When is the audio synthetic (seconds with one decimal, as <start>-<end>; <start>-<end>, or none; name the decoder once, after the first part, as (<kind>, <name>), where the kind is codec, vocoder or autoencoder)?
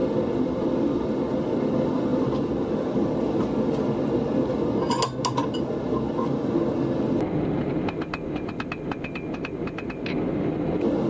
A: none